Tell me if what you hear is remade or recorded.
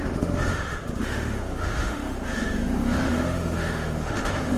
remade